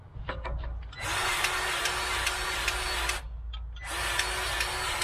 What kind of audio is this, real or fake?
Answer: real